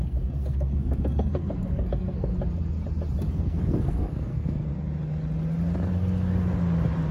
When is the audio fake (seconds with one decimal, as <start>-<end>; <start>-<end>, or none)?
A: 0.0-2.3; 3.3-4.7